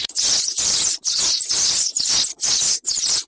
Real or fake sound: fake